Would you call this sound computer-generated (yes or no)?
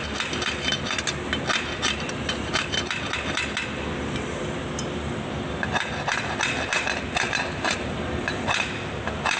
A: no